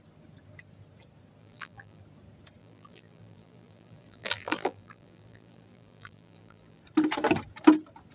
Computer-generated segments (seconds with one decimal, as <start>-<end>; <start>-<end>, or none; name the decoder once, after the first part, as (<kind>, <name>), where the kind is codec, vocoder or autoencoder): 1.4-2.0 (vocoder, BigVGAN v2); 2.6-6.8

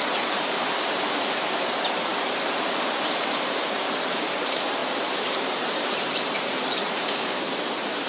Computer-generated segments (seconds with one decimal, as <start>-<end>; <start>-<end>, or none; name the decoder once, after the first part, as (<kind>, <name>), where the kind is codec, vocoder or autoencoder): 0.0-8.1 (vocoder, BigVGAN v2)